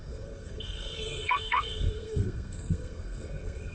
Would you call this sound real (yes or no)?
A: no